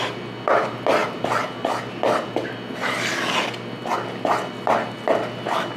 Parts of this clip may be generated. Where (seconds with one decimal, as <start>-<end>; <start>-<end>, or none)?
none